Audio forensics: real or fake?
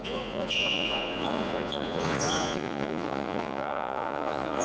fake